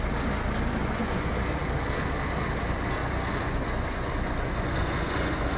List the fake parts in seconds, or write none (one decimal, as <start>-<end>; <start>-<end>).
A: 0.8-1.3; 3.0-5.6